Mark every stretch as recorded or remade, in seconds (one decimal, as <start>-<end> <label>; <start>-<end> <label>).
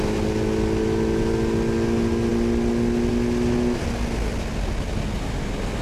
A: 0.0-5.8 recorded